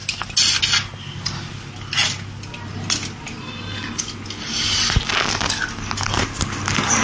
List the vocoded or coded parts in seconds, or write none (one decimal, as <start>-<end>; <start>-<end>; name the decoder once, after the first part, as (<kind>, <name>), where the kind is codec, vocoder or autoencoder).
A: none